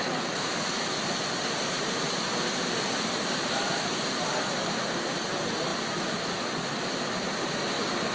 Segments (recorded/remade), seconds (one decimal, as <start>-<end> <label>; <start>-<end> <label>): 0.0-8.1 recorded